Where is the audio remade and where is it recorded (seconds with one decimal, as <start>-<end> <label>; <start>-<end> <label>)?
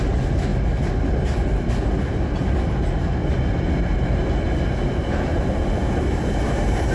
0.0-5.3 recorded; 5.3-6.9 remade